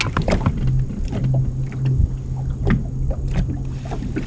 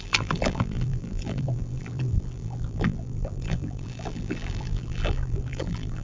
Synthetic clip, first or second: second